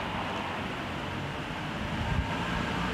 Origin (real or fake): real